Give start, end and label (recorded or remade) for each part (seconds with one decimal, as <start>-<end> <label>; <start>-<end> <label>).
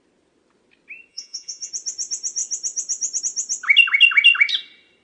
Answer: 0.0-1.1 recorded; 1.1-1.7 remade; 1.7-5.0 recorded